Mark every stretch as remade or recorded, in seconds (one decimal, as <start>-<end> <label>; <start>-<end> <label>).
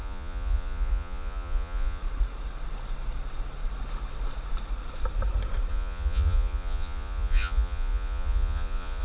0.0-2.0 remade; 2.0-5.7 recorded; 5.7-9.0 remade